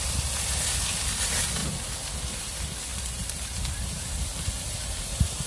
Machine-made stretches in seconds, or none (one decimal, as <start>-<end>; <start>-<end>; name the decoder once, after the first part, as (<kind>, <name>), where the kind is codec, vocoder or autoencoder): none